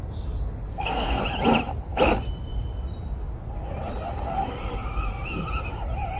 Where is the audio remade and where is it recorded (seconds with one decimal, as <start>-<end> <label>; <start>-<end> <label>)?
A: 0.0-0.7 recorded; 0.7-1.2 remade; 1.2-6.2 recorded